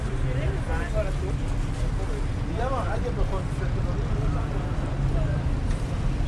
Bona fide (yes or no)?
yes